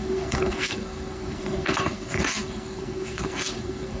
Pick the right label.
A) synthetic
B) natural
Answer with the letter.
A